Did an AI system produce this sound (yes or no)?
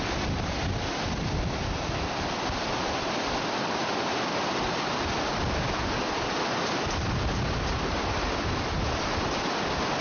no